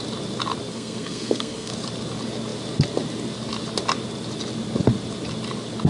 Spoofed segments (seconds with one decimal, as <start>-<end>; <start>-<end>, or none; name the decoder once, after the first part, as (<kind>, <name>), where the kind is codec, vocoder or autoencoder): 0.7-1.7 (codec, SNAC)